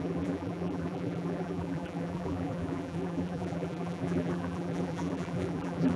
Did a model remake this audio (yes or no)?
yes